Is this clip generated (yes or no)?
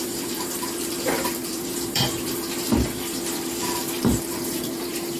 yes